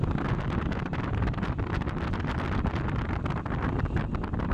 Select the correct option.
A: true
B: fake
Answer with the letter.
A